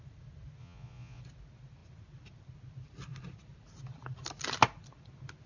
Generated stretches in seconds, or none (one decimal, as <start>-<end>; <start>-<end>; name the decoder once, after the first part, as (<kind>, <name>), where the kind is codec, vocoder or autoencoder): 0.6-1.2 (vocoder, Vocos)